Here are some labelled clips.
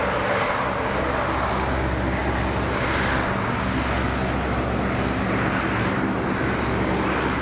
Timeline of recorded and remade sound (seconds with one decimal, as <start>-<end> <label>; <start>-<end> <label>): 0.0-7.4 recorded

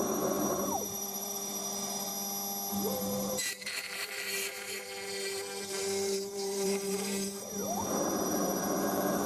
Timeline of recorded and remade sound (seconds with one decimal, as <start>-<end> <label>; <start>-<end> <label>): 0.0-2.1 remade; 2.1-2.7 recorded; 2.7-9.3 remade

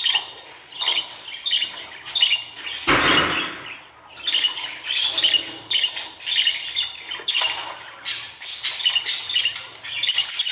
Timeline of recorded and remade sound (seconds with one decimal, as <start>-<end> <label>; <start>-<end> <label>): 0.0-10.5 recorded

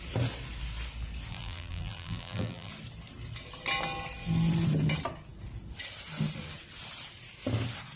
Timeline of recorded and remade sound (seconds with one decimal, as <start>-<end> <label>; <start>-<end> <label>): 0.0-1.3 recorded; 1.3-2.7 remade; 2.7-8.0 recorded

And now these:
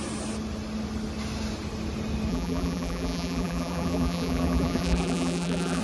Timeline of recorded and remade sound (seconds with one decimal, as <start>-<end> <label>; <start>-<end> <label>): 0.0-2.3 recorded; 2.3-5.8 remade

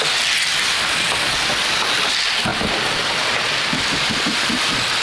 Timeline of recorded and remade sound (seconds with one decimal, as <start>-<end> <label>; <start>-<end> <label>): 0.0-2.5 recorded; 2.5-4.5 remade; 4.5-5.0 recorded